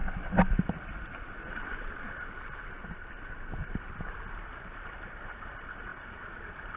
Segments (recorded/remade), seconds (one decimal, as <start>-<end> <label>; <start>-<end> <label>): 0.0-6.8 recorded